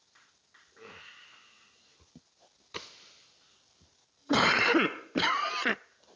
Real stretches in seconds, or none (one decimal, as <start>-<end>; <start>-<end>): 0.0-4.2; 5.5-6.2